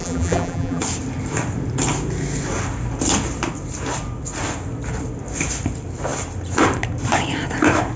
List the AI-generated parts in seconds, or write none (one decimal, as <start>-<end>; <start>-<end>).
0.0-0.8